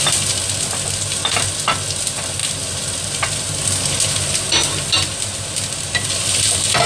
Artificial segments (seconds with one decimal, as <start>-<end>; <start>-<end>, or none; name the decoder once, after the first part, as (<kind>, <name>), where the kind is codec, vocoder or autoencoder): none